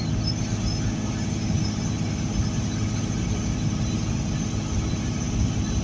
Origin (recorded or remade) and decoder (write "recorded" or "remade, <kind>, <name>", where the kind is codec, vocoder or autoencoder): recorded